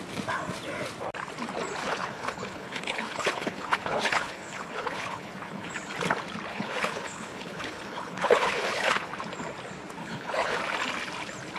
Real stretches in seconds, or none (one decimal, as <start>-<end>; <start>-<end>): 0.0-1.8; 5.7-6.5; 9.1-10.0; 10.6-11.6